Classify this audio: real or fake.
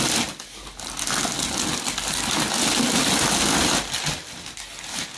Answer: real